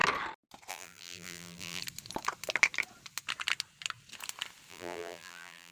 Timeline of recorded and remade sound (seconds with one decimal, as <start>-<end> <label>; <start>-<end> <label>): 0.0-0.7 recorded; 0.7-1.8 remade; 1.8-4.7 recorded; 4.7-5.7 remade